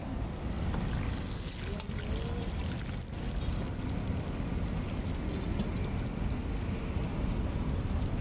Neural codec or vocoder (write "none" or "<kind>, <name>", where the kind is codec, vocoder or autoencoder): none